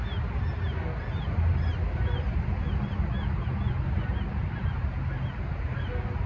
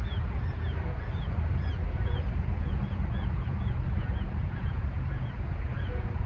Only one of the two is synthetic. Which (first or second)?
second